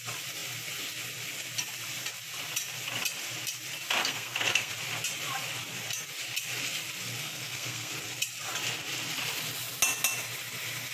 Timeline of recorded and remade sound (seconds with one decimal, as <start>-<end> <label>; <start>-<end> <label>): 0.0-4.0 recorded; 4.0-4.7 remade; 4.7-7.2 recorded; 7.2-7.9 remade; 7.9-10.9 recorded